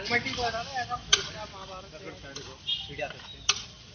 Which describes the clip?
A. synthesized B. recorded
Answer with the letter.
A